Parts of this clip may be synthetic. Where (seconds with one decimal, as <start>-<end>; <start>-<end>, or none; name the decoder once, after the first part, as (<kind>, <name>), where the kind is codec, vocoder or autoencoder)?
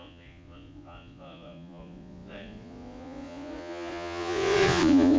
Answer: 0.0-5.2 (vocoder, Vocos)